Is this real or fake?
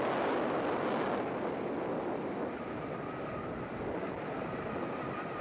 real